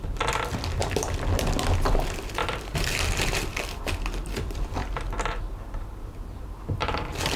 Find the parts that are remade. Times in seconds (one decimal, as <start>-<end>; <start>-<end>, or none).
0.0-0.8; 1.9-7.4